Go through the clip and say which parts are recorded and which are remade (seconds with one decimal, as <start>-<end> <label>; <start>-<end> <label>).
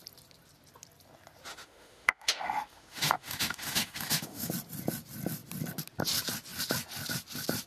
0.0-1.5 recorded; 1.5-4.5 remade; 4.5-7.7 recorded